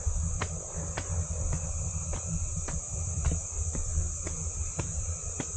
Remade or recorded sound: recorded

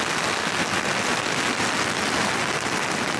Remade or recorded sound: recorded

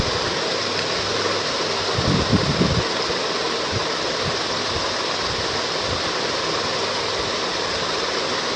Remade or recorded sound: recorded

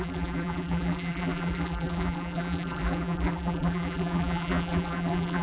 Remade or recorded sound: remade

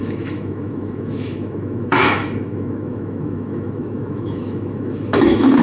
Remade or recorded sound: remade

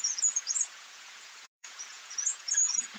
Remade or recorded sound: remade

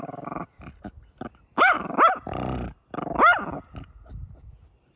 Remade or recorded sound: recorded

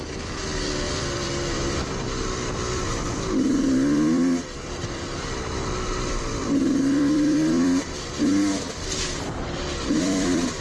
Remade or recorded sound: remade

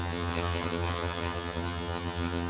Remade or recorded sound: remade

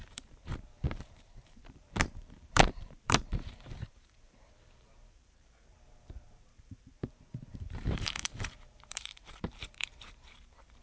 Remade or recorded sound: remade